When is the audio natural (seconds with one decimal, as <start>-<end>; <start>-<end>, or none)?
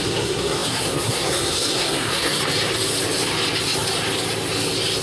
2.4-5.0